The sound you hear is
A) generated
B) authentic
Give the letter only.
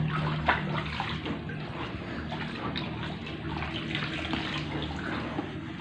B